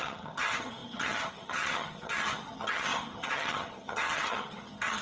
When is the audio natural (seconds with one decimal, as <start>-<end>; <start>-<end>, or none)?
none